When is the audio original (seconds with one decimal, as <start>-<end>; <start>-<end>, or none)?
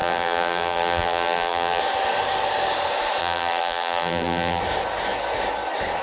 1.8-3.2; 4.6-6.0